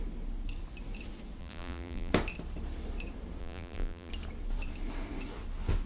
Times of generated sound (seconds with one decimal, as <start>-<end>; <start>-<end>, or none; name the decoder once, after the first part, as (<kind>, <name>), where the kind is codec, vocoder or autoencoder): 1.4-2.1 (vocoder, BigVGAN v2); 3.4-4.1